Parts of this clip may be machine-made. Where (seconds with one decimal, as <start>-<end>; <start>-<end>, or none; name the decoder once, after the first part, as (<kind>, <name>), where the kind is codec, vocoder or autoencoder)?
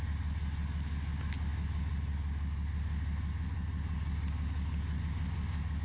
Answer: none